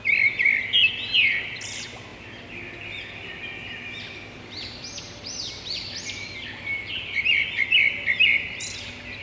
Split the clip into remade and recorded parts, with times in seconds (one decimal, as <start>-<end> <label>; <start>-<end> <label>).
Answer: 0.0-9.2 recorded